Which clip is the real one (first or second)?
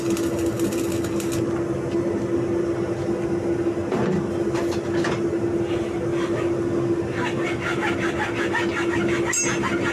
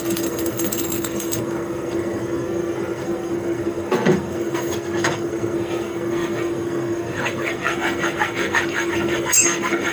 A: first